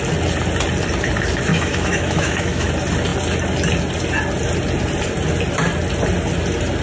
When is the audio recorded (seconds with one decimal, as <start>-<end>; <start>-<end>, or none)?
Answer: 0.0-1.5; 2.7-6.8